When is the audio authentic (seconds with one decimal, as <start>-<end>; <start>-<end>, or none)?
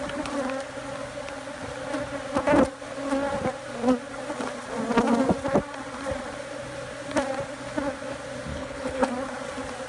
0.0-8.5; 9.1-9.9